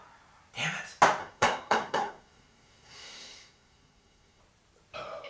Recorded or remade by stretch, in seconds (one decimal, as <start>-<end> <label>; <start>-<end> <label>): 0.0-1.2 recorded; 1.2-4.4 remade; 4.4-5.3 recorded